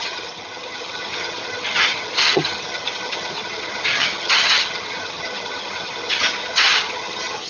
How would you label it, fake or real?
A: fake